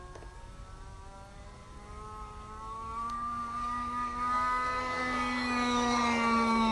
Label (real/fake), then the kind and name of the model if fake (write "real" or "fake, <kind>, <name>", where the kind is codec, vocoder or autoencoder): fake, codec, DAC